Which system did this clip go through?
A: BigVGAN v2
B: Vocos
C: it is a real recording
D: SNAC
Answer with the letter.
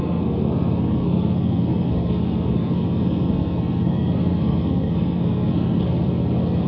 D